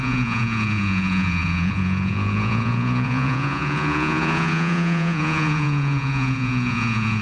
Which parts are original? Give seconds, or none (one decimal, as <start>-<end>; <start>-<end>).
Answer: none